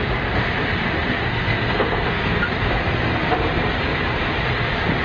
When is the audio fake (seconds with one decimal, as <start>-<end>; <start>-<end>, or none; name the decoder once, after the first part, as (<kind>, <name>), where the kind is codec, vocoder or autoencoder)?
1.3-2.2 (codec, SNAC)